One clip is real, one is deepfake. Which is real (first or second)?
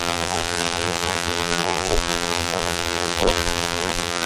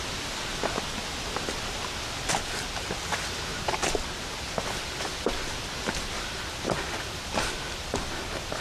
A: second